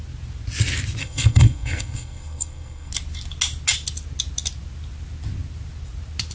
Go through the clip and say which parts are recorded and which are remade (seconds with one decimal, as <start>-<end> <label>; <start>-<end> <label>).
0.0-1.0 recorded; 1.0-2.9 remade; 2.9-6.3 recorded